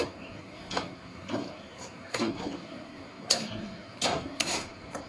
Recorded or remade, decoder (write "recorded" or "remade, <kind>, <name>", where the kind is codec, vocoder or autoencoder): remade, codec, SNAC